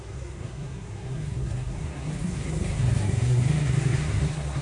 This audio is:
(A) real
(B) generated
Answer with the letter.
B